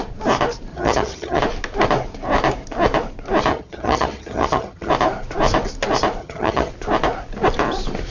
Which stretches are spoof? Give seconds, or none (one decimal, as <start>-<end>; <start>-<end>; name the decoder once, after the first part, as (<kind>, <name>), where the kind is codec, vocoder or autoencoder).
0.7-1.4 (vocoder, HiFi-GAN); 3.5-4.9; 6.2-6.7